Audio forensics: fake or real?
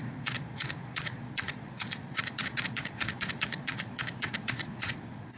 fake